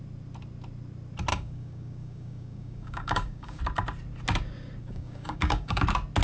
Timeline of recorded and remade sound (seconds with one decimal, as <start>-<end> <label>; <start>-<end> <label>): 0.0-1.3 recorded; 1.3-3.6 remade; 3.6-4.8 recorded; 4.8-5.8 remade; 5.8-6.2 recorded